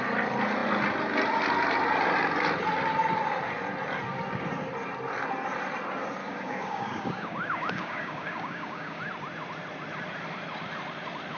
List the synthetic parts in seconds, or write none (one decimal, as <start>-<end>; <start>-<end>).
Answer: 6.2-9.0